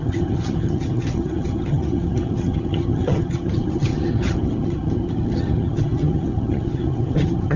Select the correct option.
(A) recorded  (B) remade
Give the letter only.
B